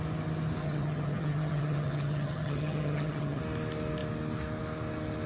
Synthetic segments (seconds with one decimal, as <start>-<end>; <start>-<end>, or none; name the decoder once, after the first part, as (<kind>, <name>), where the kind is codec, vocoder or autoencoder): 0.6-3.4 (vocoder, HiFi-GAN)